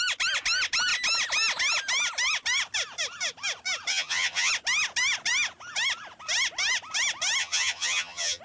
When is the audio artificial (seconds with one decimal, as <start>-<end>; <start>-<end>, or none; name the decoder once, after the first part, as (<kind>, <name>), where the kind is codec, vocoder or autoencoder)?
3.9-4.5 (vocoder, HiFi-GAN); 7.4-8.4